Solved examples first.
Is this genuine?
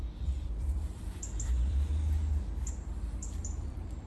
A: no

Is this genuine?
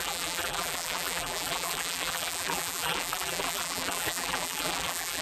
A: no